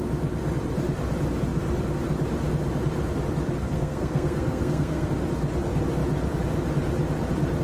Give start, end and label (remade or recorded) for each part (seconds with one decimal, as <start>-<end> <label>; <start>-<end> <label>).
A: 0.0-3.6 recorded; 3.6-5.1 remade; 5.1-7.6 recorded